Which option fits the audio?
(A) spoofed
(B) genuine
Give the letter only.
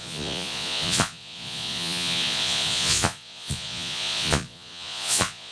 A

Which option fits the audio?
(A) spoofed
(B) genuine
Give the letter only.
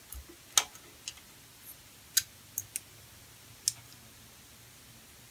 B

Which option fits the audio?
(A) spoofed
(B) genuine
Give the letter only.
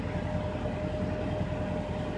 B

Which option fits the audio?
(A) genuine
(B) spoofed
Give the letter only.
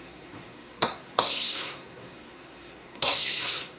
B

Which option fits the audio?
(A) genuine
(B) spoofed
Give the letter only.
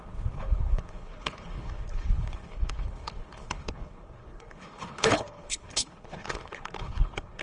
B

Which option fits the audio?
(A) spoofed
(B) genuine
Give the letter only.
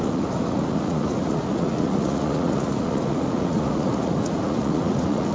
A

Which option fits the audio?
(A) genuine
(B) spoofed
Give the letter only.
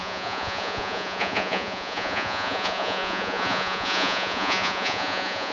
B